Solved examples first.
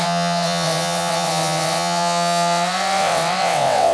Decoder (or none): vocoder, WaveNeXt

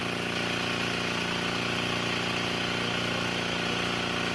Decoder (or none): none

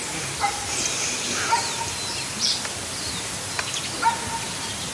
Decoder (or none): none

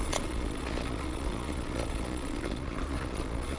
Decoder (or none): vocoder, Vocos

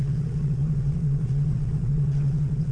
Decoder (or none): vocoder, Vocos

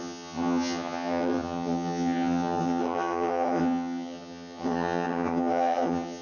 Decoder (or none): vocoder, HiFi-GAN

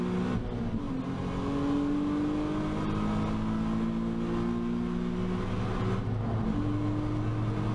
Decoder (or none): none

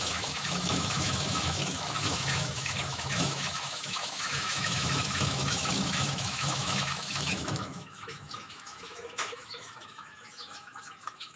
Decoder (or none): autoencoder, DAC-VAE